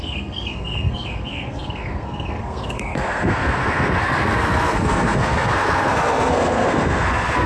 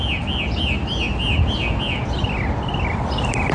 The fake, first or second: first